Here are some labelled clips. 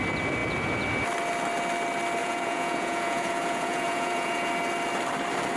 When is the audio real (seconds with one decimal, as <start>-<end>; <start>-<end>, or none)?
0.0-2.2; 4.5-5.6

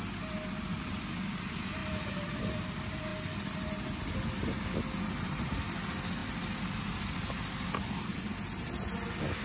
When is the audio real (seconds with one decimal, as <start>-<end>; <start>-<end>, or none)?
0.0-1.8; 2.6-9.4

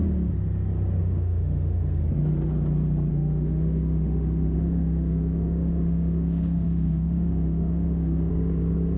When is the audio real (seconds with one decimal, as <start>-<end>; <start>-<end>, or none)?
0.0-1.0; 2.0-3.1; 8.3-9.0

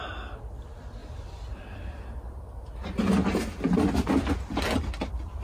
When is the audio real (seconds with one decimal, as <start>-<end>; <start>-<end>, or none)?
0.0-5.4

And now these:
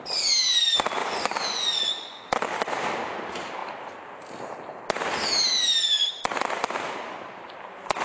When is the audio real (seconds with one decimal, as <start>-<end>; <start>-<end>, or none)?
0.0-1.0; 2.2-8.0

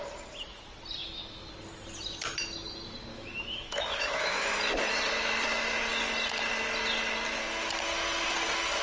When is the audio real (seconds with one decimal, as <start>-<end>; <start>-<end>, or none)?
0.0-1.0; 1.5-3.1; 4.6-8.8